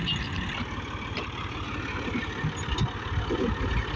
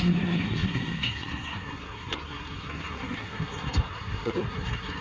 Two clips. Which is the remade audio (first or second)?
second